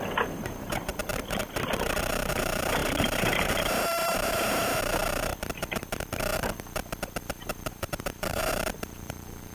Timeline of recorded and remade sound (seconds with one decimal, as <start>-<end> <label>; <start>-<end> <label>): 0.0-0.9 remade; 0.9-2.1 recorded; 2.1-5.3 remade; 5.3-7.4 recorded; 7.4-9.5 remade

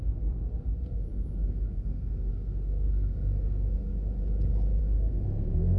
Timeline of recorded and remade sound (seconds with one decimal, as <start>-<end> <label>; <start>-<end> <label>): 0.0-3.9 remade; 3.9-4.8 recorded; 4.8-5.8 remade

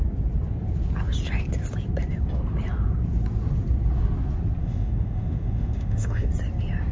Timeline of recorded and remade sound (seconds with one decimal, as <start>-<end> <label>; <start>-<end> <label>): 0.0-4.6 recorded; 4.6-6.3 remade; 6.3-6.9 recorded

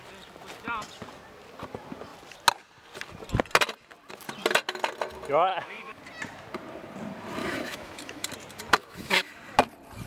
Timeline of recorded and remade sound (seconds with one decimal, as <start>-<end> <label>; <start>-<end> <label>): 0.0-5.5 recorded; 5.5-6.0 remade; 6.0-7.4 recorded; 7.4-8.3 remade; 8.3-8.8 recorded; 8.8-9.3 remade; 9.3-10.1 recorded

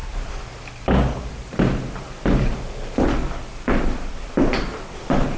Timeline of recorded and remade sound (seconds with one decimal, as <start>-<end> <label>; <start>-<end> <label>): 0.0-5.4 recorded

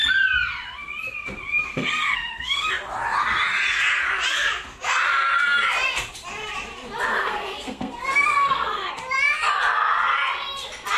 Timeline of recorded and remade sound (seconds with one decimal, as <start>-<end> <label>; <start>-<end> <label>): 0.0-1.7 recorded; 1.7-2.7 remade; 2.7-7.1 recorded; 7.1-8.9 remade; 8.9-11.0 recorded

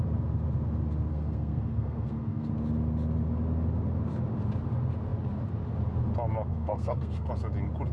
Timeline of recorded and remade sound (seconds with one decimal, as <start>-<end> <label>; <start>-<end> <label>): 0.0-1.1 recorded; 1.1-2.5 remade; 2.5-6.5 recorded; 6.5-7.3 remade; 7.3-7.9 recorded